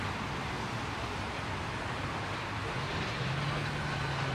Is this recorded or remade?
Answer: recorded